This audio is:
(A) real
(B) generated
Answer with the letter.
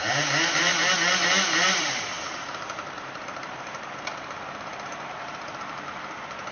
B